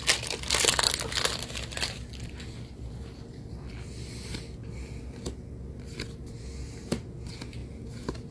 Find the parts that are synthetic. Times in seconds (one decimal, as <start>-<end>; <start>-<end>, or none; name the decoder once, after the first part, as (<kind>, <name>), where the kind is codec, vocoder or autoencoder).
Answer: none